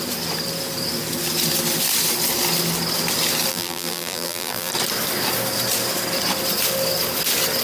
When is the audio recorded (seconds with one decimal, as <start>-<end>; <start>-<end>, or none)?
0.0-3.5; 4.7-7.6